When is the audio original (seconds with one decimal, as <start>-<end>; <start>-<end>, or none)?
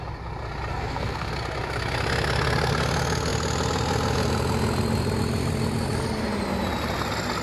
0.0-0.7; 1.3-7.4